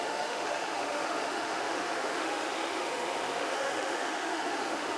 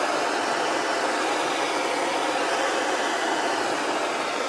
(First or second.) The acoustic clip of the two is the second